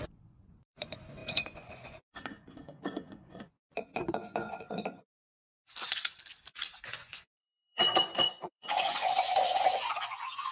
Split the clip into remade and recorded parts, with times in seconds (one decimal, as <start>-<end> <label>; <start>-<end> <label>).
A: 0.0-5.5 remade; 5.5-6.8 recorded; 6.8-10.5 remade